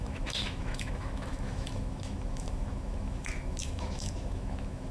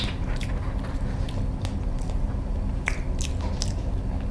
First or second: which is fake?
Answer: first